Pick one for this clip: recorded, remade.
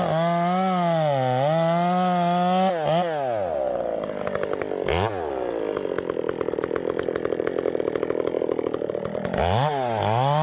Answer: recorded